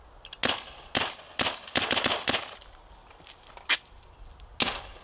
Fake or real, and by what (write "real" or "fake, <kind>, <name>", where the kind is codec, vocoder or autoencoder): real